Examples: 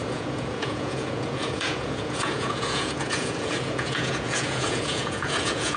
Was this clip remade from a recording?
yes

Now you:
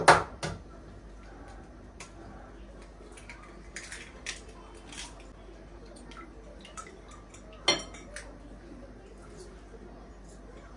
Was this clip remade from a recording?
no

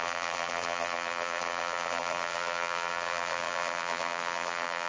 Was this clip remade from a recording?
yes